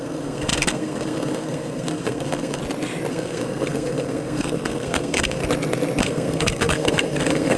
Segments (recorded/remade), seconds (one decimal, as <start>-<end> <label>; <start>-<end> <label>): 0.0-2.6 remade; 2.6-3.1 recorded; 3.1-5.4 remade; 5.4-6.0 recorded; 6.0-7.6 remade